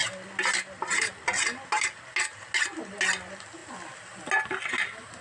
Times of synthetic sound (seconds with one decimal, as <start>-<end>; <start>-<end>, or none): none